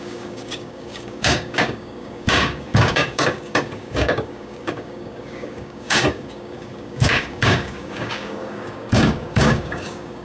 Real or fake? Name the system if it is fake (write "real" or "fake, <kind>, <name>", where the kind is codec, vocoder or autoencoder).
fake, codec, DAC